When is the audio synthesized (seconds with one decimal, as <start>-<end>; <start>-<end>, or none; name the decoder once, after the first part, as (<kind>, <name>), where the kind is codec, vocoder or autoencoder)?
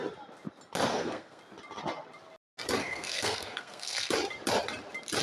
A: 0.9-1.4 (codec, SNAC); 2.8-4.1